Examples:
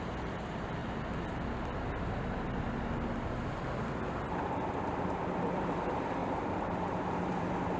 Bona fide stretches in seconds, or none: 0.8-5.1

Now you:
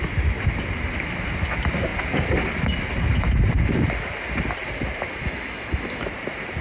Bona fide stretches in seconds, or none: 0.0-5.2; 6.0-6.6